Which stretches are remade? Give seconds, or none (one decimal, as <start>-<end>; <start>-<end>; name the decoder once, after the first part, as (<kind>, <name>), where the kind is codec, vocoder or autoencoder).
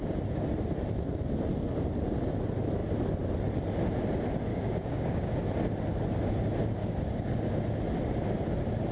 4.5-5.4 (codec, DAC); 6.8-7.5